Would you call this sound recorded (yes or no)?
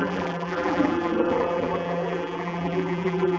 no